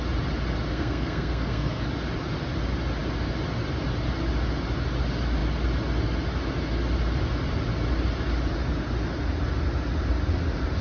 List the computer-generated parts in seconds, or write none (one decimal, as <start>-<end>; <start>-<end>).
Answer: 0.7-1.8